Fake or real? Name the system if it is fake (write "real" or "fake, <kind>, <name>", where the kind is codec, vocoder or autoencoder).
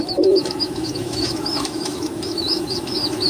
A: fake, autoencoder, DAC-VAE